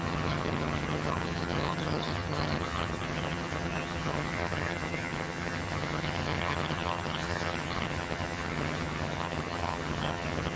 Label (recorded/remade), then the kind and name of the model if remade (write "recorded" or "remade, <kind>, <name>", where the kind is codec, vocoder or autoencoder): remade, vocoder, HiFi-GAN